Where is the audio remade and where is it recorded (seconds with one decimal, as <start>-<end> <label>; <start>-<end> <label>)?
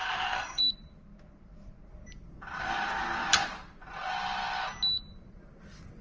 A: 0.0-0.7 remade; 0.7-6.0 recorded